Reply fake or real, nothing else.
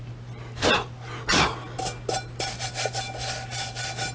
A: real